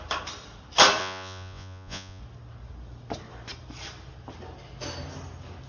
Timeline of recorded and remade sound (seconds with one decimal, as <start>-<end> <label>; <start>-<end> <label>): 0.0-1.0 recorded; 1.0-2.2 remade; 2.2-5.7 recorded